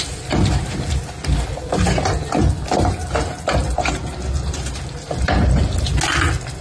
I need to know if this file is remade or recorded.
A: recorded